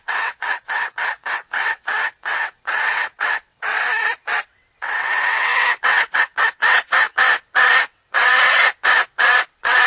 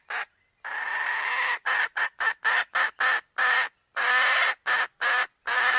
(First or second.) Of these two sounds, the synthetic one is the first